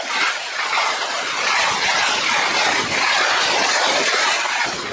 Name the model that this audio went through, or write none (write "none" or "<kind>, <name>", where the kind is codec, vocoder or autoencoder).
none